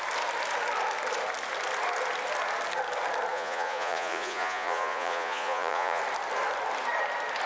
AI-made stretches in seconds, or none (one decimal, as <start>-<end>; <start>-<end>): 3.3-6.0